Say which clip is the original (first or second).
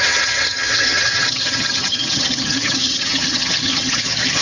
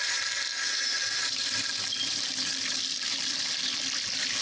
second